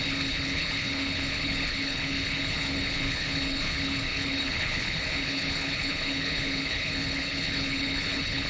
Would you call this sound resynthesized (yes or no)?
yes